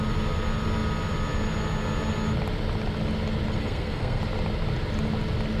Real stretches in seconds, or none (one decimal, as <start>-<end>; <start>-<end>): 0.0-3.5; 4.2-5.6